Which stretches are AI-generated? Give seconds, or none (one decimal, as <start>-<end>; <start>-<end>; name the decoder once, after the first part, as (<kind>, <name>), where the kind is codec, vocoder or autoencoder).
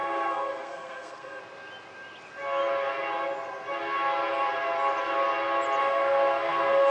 0.0-1.4 (codec, SNAC); 5.8-6.9